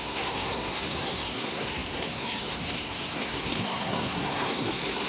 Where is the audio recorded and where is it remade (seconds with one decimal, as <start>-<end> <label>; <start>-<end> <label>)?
0.0-5.1 remade